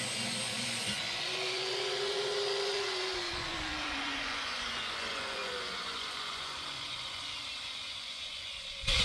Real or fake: fake